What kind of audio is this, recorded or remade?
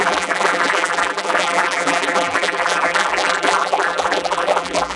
remade